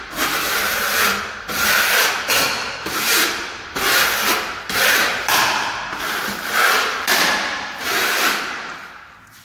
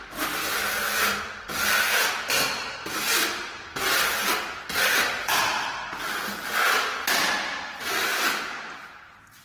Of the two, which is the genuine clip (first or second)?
second